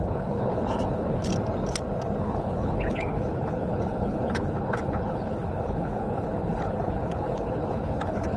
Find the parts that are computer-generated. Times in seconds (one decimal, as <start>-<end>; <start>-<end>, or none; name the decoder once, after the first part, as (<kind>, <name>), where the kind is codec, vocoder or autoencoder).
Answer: 0.0-1.3 (codec, HILCodec); 2.2-8.4